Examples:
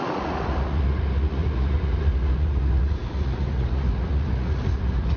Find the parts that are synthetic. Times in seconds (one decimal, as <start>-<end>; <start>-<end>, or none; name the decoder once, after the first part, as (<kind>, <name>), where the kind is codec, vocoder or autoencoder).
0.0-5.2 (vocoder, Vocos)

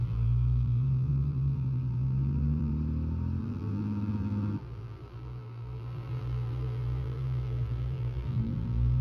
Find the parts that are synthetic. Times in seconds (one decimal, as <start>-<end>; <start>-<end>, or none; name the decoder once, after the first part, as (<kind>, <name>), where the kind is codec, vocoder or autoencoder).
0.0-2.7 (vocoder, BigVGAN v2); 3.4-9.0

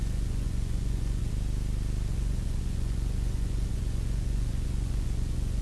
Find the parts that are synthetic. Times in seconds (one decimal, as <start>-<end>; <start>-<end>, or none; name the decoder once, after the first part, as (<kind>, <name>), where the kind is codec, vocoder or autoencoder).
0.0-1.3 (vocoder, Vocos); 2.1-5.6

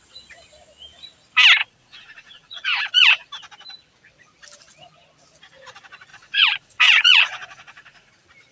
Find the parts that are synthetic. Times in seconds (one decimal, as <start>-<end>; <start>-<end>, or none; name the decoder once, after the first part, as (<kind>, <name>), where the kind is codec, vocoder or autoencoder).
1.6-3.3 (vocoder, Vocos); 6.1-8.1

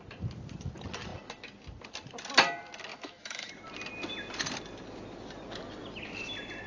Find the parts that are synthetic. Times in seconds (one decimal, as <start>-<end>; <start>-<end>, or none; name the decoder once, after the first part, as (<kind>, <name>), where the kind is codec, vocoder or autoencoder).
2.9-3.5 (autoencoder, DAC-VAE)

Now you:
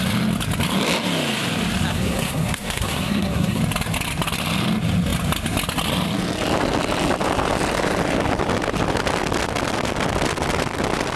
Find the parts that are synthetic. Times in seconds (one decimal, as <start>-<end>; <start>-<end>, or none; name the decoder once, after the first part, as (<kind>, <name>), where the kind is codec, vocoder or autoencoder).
1.9-3.6 (codec, SNAC)

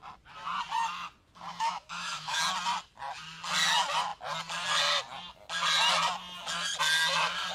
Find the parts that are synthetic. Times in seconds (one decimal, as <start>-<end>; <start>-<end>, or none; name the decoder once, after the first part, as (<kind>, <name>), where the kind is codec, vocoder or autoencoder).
1.5-2.4 (autoencoder, DAC-VAE)

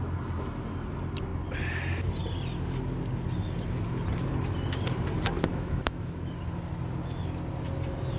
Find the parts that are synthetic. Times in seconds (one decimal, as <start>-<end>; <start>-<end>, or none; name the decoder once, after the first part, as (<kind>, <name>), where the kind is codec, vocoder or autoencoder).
5.5-6.3 (autoencoder, DAC-VAE)